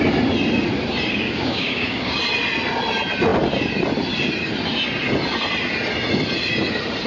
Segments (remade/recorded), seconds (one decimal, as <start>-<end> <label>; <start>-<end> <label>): 0.0-1.1 recorded; 1.1-2.2 remade; 2.2-7.1 recorded